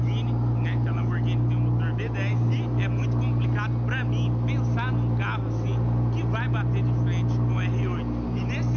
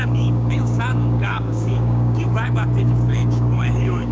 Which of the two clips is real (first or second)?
first